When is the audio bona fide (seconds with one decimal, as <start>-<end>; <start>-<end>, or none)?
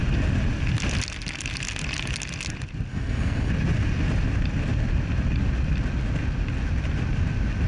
0.0-2.9; 3.5-7.7